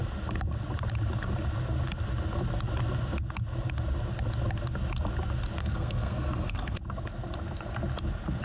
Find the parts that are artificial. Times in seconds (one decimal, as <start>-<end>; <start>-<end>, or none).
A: 5.6-6.8